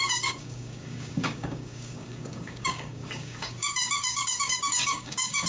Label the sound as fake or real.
fake